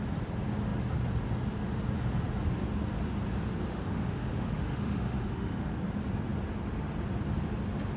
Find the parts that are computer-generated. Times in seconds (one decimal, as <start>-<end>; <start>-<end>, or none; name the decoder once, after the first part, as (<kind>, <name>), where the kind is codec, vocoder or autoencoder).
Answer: 3.7-5.7 (autoencoder, DAC-VAE)